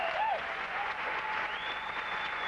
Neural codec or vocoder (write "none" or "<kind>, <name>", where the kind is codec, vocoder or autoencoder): vocoder, Vocos